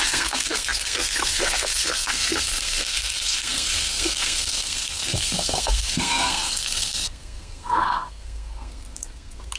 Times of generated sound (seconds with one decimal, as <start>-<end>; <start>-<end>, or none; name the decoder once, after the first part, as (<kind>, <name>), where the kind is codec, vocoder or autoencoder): 0.0-9.6 (codec, SNAC)